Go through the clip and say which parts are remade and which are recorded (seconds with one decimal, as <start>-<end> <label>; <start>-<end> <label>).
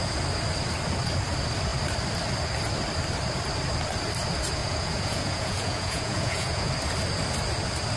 0.0-4.6 recorded; 4.6-6.7 remade; 6.7-8.0 recorded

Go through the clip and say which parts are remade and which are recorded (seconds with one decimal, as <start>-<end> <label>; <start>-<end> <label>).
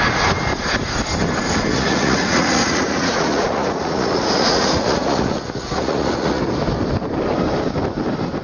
0.0-1.7 recorded; 1.7-6.4 remade; 6.4-8.4 recorded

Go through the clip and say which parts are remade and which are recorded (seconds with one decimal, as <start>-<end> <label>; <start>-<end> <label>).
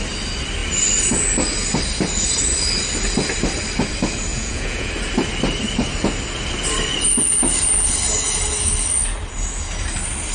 0.0-4.3 recorded; 4.3-4.9 remade; 4.9-10.3 recorded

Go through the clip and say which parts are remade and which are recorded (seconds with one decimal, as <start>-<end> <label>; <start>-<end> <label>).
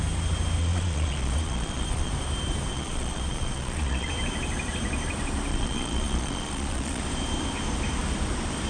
0.0-0.6 recorded; 0.6-2.1 remade; 2.1-2.7 recorded; 2.7-4.1 remade; 4.1-5.5 recorded; 5.5-7.0 remade; 7.0-8.7 recorded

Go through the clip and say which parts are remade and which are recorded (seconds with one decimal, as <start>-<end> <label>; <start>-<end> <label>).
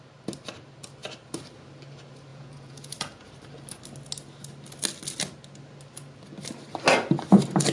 0.0-2.3 recorded; 2.3-3.3 remade; 3.3-7.7 recorded